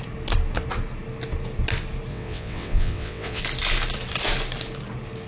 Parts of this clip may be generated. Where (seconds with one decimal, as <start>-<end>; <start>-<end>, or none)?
2.1-3.4